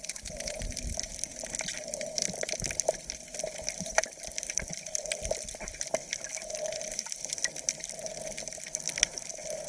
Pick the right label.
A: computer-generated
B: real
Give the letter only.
B